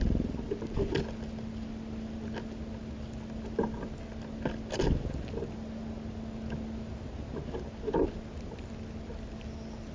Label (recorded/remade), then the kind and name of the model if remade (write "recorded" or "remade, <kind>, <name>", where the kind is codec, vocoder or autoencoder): recorded